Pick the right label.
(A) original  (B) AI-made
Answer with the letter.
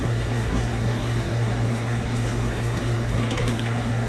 B